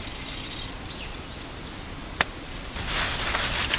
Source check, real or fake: real